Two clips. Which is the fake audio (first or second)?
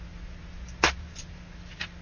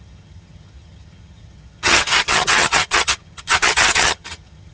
second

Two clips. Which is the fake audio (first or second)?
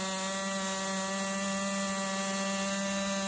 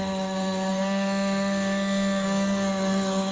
second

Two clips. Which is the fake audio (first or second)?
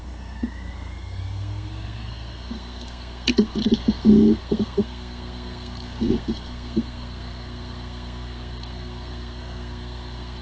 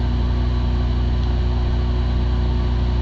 first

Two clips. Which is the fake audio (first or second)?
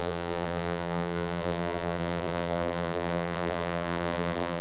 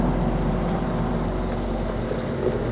first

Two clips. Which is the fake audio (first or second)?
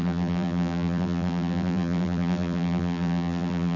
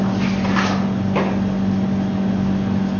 first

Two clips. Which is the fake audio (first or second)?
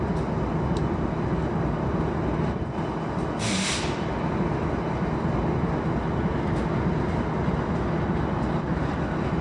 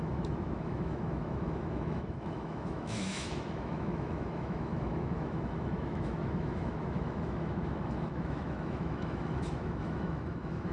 second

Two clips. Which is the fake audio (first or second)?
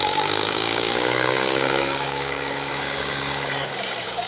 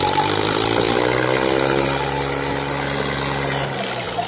first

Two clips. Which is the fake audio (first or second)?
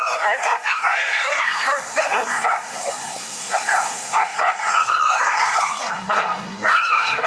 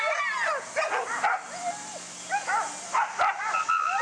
first